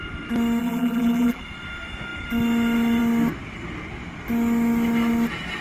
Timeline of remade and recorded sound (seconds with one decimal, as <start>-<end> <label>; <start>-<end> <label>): 0.0-0.6 recorded; 0.6-1.4 remade; 1.4-5.6 recorded